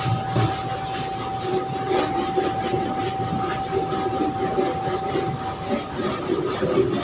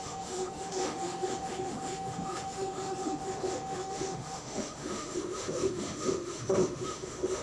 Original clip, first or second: first